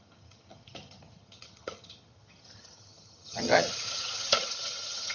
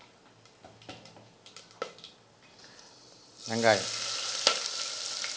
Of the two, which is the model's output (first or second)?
first